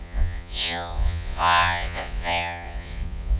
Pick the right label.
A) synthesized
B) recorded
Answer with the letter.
A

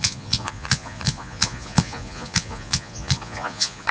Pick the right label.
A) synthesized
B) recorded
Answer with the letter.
A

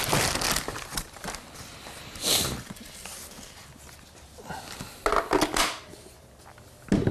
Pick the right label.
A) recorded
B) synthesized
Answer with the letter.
A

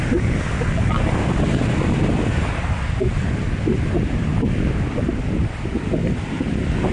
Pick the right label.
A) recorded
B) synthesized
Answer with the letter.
A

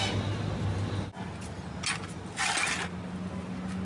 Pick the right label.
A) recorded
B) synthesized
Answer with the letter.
A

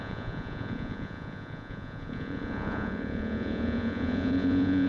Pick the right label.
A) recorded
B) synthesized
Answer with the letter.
B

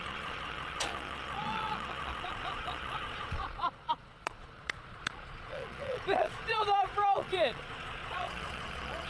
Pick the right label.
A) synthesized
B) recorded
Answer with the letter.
A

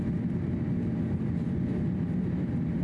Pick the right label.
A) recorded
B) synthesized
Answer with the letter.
A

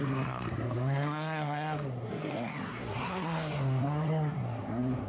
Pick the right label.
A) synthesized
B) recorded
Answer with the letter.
A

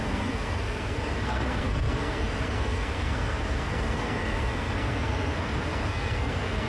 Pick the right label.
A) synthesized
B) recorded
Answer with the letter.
A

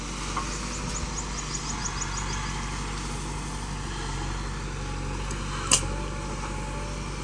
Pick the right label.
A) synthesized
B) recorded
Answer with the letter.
B